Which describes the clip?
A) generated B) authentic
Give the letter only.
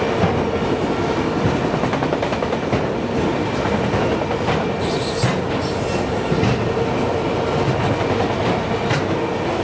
B